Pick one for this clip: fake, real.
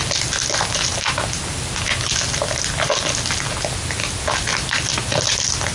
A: real